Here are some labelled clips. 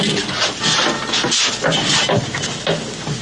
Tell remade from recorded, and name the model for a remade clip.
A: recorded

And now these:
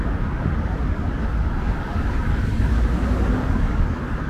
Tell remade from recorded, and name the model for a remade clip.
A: remade, codec, DAC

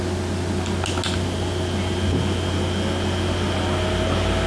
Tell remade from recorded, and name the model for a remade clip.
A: recorded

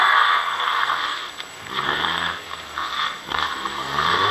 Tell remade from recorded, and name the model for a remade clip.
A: remade, codec, SNAC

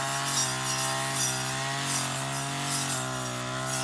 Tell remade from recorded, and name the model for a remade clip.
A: recorded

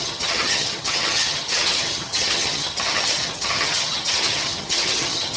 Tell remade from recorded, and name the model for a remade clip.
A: remade, vocoder, HiFi-GAN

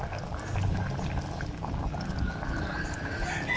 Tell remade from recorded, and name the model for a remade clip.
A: recorded